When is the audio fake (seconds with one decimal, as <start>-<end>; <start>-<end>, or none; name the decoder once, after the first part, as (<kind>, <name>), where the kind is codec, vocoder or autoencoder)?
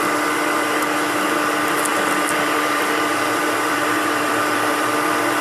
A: 1.9-5.4 (vocoder, BigVGAN v2)